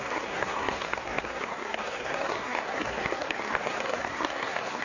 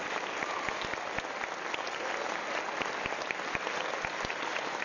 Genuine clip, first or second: second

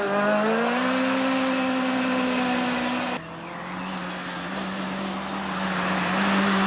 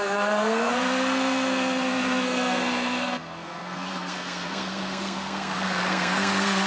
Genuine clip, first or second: first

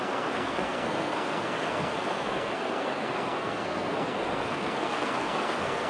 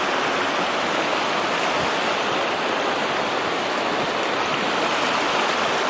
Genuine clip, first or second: second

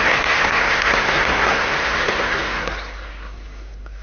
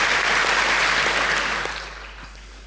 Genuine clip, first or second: second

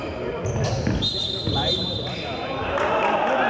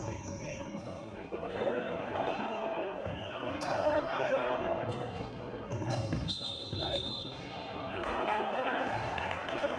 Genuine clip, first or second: first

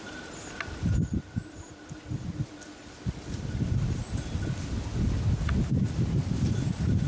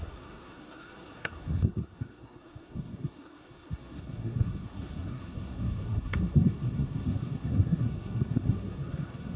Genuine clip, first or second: first